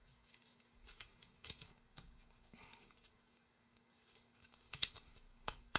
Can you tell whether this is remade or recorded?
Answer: remade